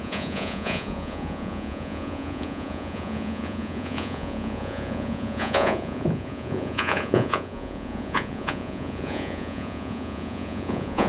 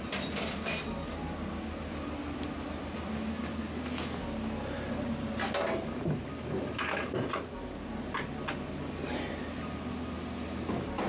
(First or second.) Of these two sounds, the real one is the second